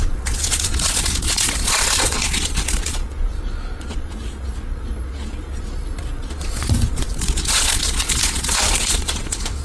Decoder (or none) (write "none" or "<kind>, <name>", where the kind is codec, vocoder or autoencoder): vocoder, Vocos